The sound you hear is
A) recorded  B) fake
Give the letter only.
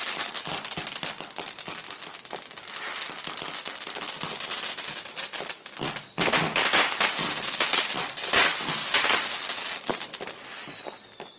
A